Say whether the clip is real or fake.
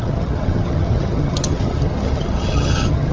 fake